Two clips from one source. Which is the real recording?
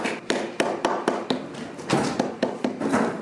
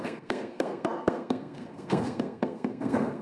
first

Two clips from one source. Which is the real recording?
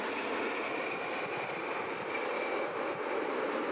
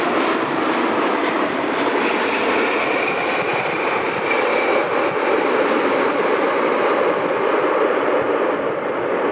first